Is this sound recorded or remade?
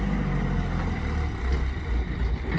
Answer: recorded